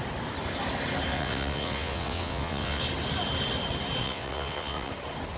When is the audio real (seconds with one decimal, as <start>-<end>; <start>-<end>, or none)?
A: 0.0-1.1; 2.8-4.0; 4.9-5.4